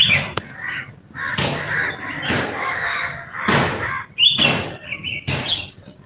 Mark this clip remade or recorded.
recorded